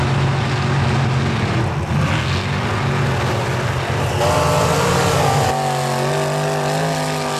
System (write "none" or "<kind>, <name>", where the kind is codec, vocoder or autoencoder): none